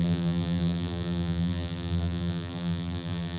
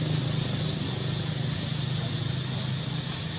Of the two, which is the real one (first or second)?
second